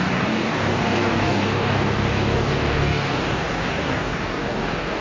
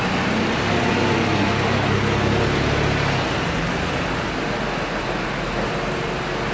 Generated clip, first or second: first